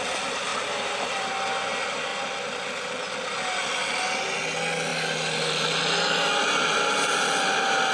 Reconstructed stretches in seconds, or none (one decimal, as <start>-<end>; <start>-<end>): none